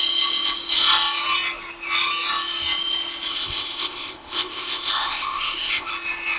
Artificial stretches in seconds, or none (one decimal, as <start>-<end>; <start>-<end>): 3.3-5.9